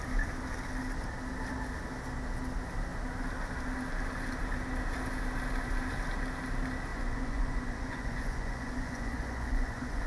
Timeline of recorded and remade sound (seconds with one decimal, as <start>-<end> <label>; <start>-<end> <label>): 0.0-6.9 recorded; 6.9-10.1 remade